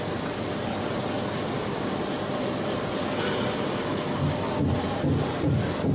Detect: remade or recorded recorded